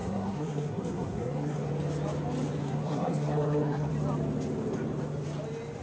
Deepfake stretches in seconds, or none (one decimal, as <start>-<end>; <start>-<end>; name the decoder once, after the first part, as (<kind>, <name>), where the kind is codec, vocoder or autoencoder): 0.0-1.7 (codec, SNAC); 2.6-3.9